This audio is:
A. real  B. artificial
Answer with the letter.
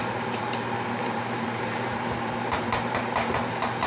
B